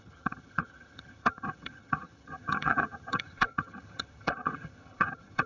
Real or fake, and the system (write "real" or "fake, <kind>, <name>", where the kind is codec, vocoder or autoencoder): fake, vocoder, HiFi-GAN